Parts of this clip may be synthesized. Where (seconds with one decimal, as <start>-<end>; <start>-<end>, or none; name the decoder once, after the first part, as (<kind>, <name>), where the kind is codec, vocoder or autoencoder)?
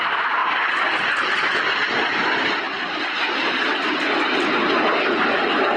none